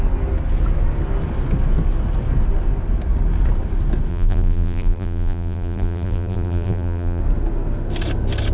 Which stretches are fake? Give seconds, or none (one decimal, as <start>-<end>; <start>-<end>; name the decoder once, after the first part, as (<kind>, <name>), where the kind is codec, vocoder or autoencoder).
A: 4.1-7.2 (vocoder, BigVGAN v2)